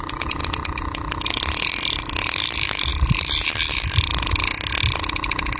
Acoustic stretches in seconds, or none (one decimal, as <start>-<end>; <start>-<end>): 0.4-2.4; 4.1-5.6